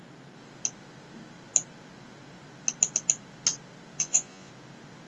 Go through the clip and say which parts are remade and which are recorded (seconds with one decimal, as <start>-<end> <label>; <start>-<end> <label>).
0.0-4.0 recorded; 4.0-4.5 remade; 4.5-5.1 recorded